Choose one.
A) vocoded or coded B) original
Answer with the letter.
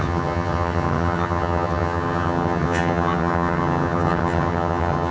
A